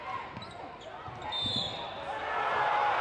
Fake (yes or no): no